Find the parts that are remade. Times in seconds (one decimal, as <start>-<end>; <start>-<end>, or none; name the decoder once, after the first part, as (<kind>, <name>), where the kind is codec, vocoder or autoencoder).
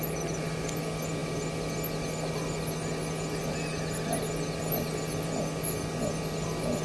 none